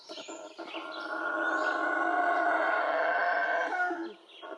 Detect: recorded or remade recorded